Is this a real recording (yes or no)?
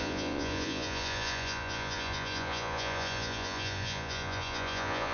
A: no